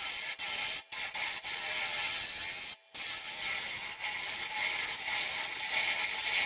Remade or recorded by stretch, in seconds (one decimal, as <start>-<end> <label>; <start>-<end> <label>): 0.0-6.5 recorded